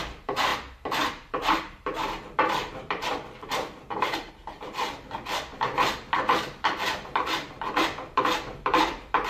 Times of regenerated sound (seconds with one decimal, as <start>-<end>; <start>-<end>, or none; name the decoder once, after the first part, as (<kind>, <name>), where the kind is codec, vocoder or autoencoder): 0.0-5.5 (vocoder, BigVGAN v2); 6.1-9.3